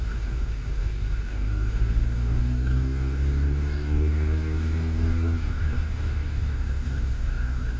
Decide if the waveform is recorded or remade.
remade